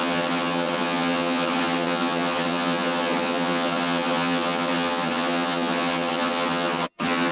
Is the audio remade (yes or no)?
yes